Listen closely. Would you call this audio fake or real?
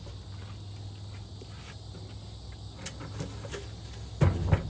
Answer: real